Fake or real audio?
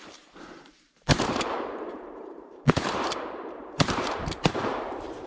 fake